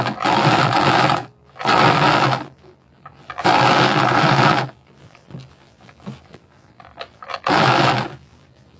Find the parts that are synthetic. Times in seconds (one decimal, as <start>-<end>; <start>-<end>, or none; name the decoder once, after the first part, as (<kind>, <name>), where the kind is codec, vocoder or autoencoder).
0.0-8.8 (vocoder, BigVGAN v2)